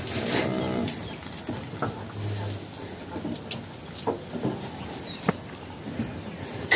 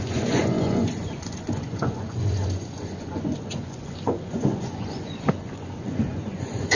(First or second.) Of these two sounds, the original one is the first